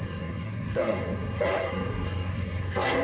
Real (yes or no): no